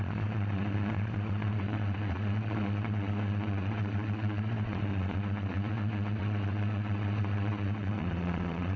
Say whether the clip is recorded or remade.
remade